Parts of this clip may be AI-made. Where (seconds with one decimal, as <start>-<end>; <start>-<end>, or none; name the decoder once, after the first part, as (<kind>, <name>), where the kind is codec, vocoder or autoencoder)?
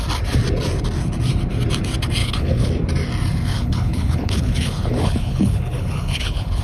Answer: 2.2-2.7 (codec, HILCodec); 3.5-6.6